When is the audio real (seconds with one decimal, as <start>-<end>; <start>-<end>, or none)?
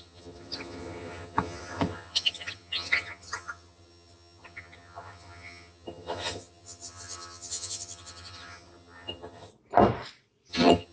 9.5-10.5